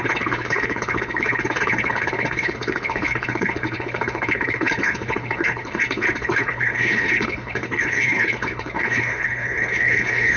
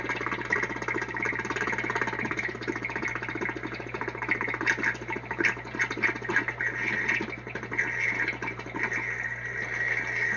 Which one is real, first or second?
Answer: second